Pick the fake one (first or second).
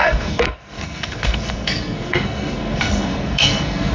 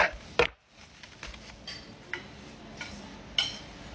first